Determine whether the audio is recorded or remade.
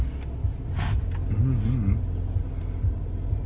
recorded